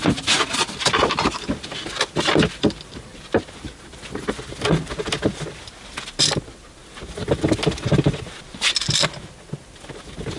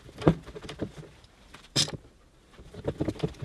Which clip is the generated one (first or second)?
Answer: second